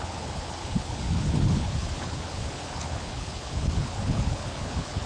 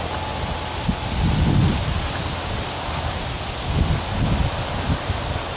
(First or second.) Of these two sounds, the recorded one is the second